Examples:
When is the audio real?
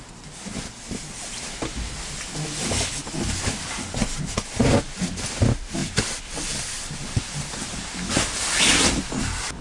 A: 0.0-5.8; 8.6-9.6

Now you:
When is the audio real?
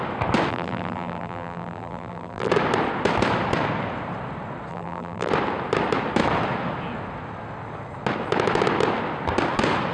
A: 0.0-0.5; 2.5-4.7; 5.3-9.9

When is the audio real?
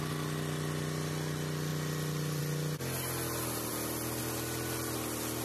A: 0.0-5.4